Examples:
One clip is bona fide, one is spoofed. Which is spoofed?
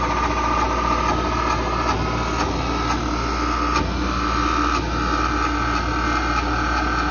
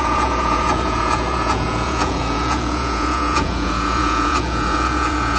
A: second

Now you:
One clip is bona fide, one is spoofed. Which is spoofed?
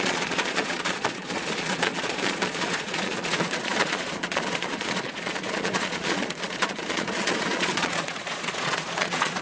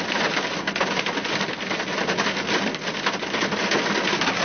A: first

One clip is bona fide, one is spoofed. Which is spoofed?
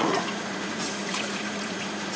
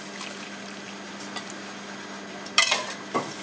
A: first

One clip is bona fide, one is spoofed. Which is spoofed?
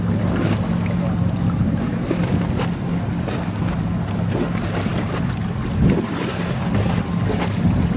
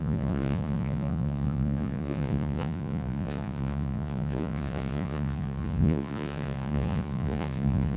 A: second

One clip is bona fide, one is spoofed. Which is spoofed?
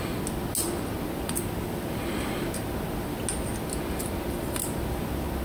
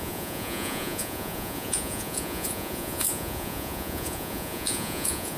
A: second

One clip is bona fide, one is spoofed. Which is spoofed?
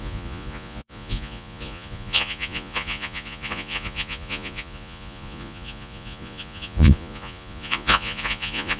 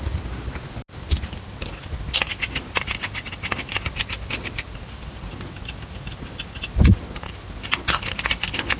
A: first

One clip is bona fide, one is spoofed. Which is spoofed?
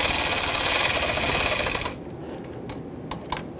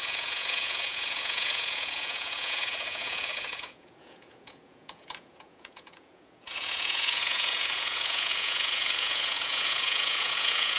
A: second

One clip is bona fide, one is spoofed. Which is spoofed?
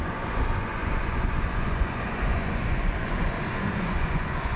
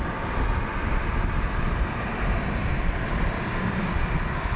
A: first